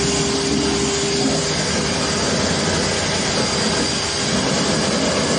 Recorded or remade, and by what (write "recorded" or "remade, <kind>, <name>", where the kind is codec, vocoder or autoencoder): recorded